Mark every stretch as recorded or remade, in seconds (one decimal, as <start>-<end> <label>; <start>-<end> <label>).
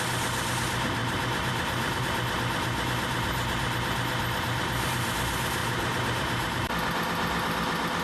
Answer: 0.0-1.0 recorded; 1.0-2.0 remade; 2.0-5.6 recorded; 5.6-6.7 remade; 6.7-8.0 recorded